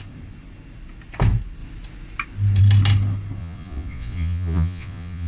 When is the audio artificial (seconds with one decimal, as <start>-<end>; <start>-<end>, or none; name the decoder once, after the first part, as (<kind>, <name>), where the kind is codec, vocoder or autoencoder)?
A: 3.4-5.3 (vocoder, Vocos)